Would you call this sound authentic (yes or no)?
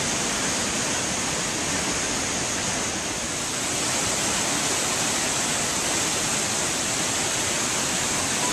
yes